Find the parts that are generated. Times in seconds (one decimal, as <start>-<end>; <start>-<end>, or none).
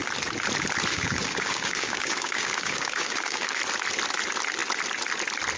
0.9-3.6